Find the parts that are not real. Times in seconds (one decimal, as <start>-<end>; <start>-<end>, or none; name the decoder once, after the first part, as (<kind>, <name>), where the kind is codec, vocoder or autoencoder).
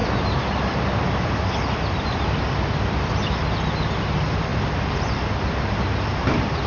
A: none